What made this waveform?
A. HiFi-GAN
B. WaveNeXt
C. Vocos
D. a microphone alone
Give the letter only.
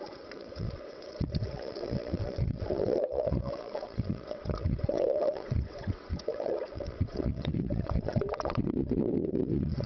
B